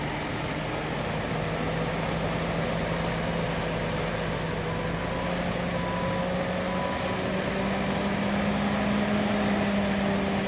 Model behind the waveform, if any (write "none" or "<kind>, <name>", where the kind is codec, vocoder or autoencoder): none